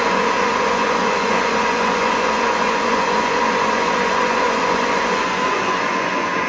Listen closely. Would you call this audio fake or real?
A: fake